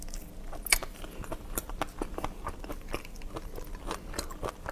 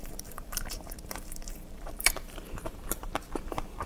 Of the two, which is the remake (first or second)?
second